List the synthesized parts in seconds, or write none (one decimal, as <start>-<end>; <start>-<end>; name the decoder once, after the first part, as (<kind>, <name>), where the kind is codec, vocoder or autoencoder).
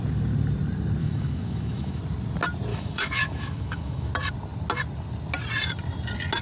1.0-2.0 (autoencoder, DAC-VAE); 2.7-4.1